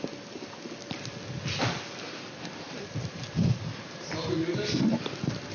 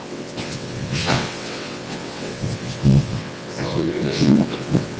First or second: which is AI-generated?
second